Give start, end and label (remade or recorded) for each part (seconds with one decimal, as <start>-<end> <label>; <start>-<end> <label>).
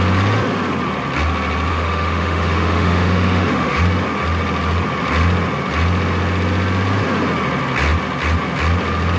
0.0-1.7 recorded; 1.7-3.8 remade; 3.8-9.2 recorded